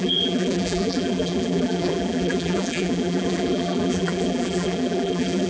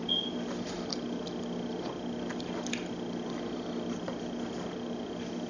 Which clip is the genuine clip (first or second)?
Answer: second